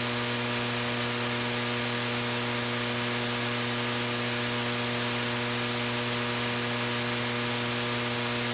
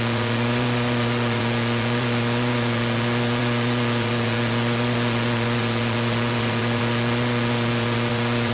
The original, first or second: first